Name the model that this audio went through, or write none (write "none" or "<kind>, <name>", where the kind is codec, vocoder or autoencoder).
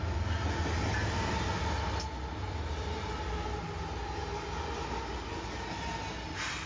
none